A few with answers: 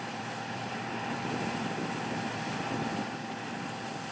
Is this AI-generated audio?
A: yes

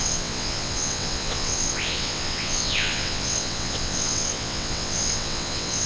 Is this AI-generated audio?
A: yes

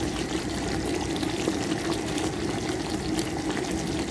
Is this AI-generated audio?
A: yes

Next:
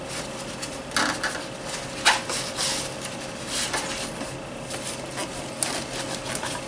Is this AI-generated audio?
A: no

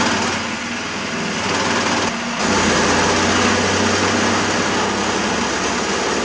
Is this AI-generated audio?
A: no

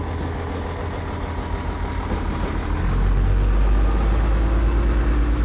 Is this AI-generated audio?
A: no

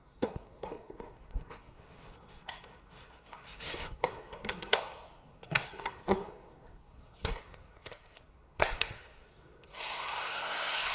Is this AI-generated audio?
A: yes